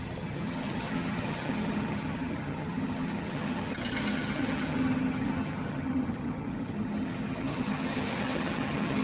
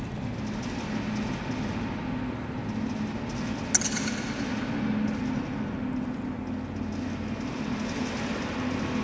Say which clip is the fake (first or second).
first